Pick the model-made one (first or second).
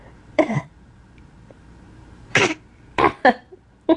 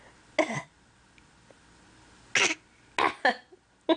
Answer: first